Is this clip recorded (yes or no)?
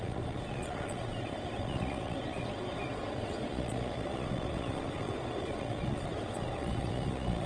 no